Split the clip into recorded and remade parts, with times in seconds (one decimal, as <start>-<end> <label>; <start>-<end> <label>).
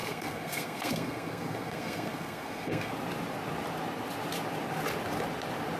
0.0-2.9 remade; 2.9-5.8 recorded